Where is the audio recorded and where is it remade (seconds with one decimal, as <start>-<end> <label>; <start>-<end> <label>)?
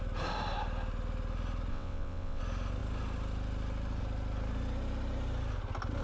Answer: 0.0-1.7 recorded; 1.7-2.4 remade; 2.4-6.0 recorded